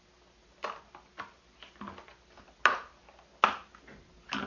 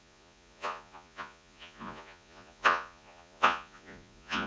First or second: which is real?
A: first